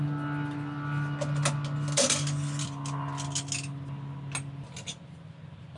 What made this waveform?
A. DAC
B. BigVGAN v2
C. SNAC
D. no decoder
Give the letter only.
D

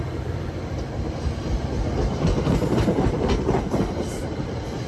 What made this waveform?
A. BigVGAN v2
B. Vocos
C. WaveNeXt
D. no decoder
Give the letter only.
A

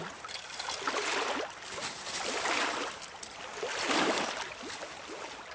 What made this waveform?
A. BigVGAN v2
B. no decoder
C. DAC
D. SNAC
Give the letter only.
A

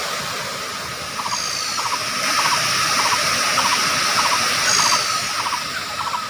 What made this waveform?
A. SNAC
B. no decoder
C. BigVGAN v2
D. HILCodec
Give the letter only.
B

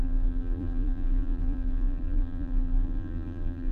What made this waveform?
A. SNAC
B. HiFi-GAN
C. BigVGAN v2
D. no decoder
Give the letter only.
C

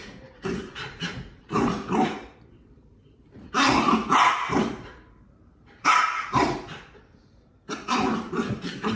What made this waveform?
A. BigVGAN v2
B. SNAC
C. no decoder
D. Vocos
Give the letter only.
A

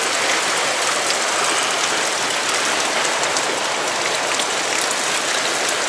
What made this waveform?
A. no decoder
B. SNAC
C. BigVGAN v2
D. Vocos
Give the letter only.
A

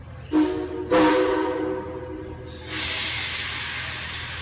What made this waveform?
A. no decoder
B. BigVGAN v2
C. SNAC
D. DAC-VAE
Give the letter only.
A